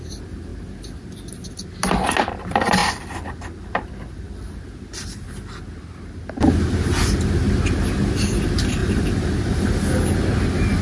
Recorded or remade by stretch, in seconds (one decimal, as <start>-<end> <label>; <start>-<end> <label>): 0.0-2.8 recorded; 2.8-4.5 remade; 4.5-8.8 recorded; 8.8-9.7 remade; 9.7-10.8 recorded